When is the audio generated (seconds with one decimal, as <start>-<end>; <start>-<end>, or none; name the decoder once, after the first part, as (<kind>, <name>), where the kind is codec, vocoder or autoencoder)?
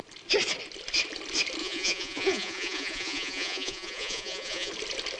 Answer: 1.6-4.7 (vocoder, Vocos)